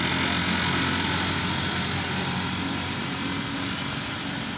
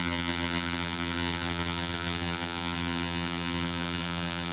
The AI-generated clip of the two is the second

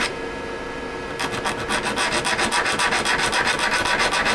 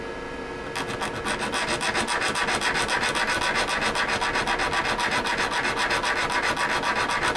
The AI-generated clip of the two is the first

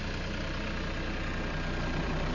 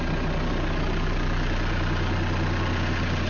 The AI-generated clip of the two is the first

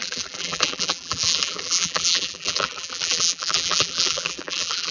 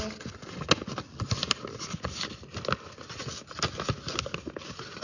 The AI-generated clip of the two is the first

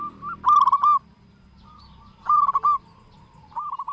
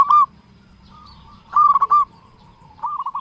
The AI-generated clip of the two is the second